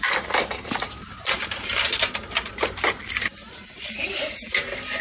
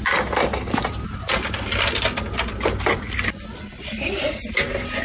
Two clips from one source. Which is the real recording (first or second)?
second